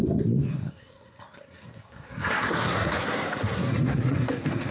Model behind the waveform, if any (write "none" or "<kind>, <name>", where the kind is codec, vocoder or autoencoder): codec, SNAC